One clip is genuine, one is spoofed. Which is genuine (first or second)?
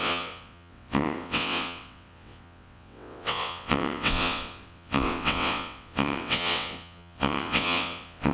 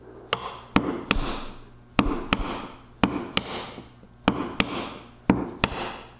second